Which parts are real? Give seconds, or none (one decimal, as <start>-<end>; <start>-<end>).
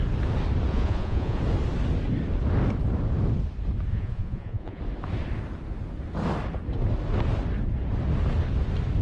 0.0-0.7; 1.4-3.9; 4.8-9.0